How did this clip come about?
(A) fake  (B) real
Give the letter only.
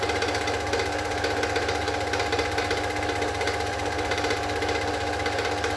B